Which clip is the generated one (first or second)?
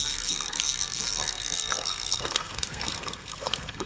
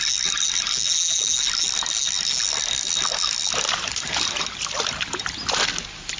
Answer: first